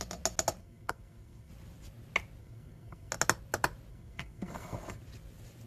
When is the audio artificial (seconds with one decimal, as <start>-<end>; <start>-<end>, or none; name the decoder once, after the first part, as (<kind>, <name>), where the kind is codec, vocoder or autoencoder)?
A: 0.6-1.5 (codec, SNAC); 2.4-3.1; 3.9-5.0